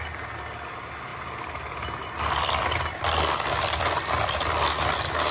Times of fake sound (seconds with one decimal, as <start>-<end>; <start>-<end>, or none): none